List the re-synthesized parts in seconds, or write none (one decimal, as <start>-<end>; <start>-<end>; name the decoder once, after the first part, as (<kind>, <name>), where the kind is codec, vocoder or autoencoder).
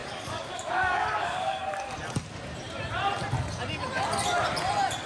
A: 0.0-2.0 (codec, DAC)